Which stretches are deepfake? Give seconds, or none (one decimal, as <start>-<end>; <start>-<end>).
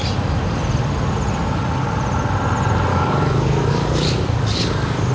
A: 2.9-5.1